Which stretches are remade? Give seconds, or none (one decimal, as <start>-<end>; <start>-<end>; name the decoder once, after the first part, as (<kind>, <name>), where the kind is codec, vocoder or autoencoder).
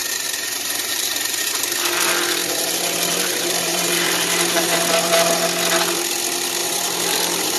0.0-1.6 (vocoder, BigVGAN v2); 2.4-4.8; 6.6-7.6